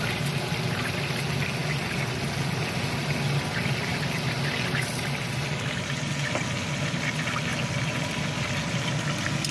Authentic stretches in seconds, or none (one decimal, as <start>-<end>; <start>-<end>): 0.0-9.5